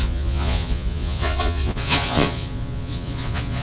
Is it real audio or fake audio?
fake